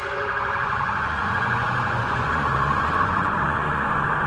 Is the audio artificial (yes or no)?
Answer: yes